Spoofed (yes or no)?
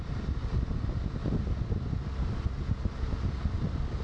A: no